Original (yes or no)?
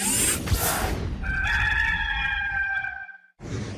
yes